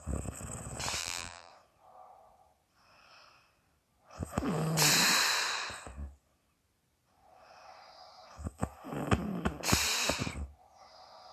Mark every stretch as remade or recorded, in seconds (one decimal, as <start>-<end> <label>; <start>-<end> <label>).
0.0-1.0 recorded; 1.0-1.5 remade; 1.5-11.3 recorded